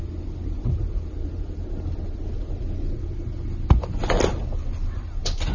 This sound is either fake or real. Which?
real